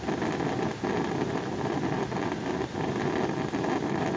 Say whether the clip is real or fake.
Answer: real